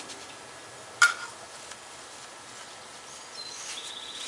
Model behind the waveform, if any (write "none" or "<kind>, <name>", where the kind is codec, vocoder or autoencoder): none